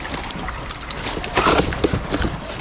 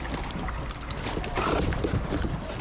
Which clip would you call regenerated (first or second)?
first